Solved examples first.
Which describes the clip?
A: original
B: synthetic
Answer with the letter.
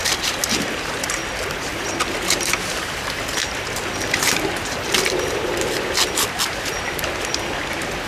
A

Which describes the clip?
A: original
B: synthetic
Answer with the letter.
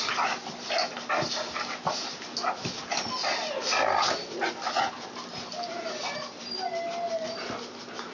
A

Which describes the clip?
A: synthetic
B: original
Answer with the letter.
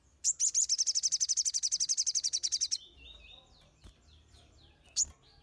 B